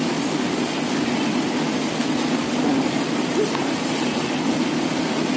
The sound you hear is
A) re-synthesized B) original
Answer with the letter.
B